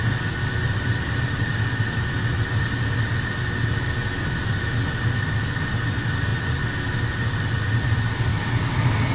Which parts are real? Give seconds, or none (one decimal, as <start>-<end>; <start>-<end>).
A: 0.0-9.1